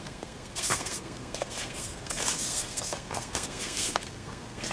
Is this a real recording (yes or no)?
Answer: no